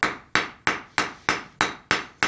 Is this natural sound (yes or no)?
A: yes